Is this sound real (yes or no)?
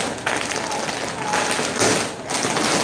yes